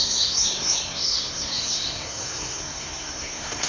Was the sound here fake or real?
fake